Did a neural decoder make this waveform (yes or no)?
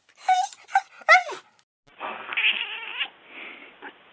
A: no